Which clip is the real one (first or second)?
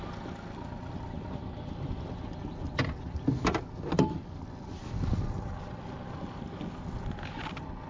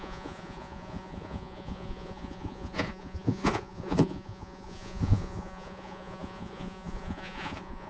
first